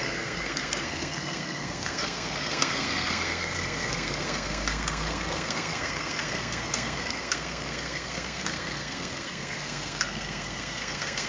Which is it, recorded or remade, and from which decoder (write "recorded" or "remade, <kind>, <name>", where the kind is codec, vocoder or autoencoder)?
remade, codec, SNAC